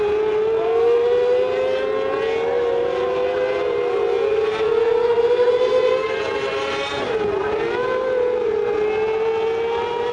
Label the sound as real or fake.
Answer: real